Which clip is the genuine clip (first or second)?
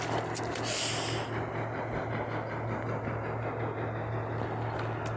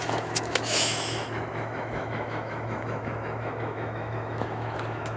first